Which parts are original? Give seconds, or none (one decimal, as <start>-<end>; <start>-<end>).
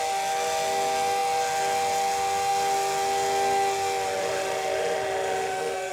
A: 0.0-4.2